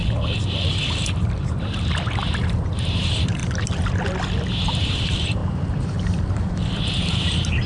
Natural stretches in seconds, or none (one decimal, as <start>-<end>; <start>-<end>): 0.0-2.1; 3.4-4.5; 5.4-6.7